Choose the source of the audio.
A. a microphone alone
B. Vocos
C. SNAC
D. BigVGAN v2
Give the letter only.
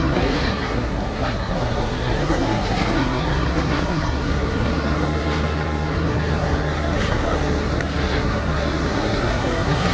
C